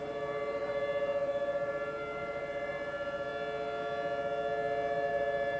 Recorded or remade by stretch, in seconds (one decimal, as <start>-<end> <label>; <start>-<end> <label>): 0.0-3.3 remade; 3.3-5.1 recorded; 5.1-5.6 remade

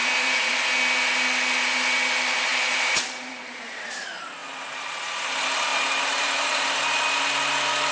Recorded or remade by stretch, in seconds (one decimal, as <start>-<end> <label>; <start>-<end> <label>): 0.0-0.5 remade; 0.5-2.5 recorded; 2.5-3.9 remade; 3.9-5.7 recorded; 5.7-6.8 remade; 6.8-7.9 recorded

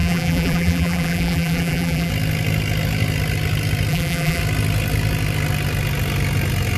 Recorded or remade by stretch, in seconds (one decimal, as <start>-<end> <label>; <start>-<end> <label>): 0.0-2.1 remade; 2.1-3.9 recorded; 3.9-4.4 remade; 4.4-6.8 recorded

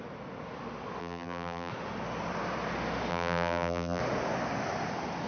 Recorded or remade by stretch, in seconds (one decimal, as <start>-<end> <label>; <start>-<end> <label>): 0.0-1.0 recorded; 1.0-1.7 remade; 1.7-3.1 recorded; 3.1-4.0 remade; 4.0-5.3 recorded

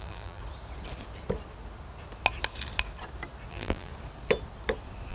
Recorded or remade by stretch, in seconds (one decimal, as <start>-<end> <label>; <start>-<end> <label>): 0.0-0.4 remade; 0.4-3.5 recorded; 3.5-3.9 remade; 3.9-5.1 recorded

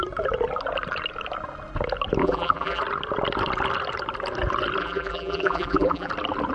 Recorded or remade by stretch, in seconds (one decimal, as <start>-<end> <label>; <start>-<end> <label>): 0.0-2.2 recorded; 2.2-2.8 remade; 2.8-4.8 recorded; 4.8-6.1 remade; 6.1-6.5 recorded

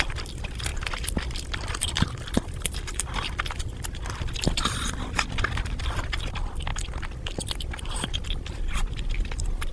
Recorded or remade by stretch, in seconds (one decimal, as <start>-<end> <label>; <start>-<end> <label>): 0.0-8.8 remade; 8.8-9.7 recorded

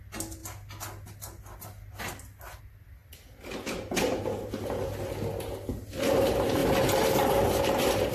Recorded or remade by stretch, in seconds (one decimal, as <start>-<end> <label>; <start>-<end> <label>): 0.0-8.1 recorded